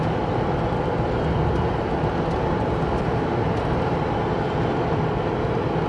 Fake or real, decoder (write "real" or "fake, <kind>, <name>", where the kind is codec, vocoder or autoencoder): real